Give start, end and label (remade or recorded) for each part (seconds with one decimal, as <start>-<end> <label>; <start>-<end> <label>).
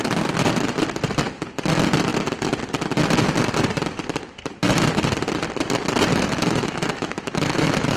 0.0-6.1 recorded; 6.1-8.0 remade